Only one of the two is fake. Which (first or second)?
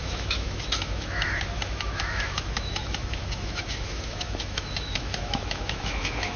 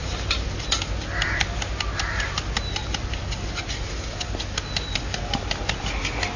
first